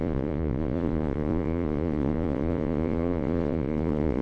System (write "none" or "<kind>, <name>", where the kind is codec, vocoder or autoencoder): vocoder, Vocos